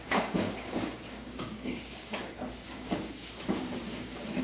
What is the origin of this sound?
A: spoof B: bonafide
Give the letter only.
A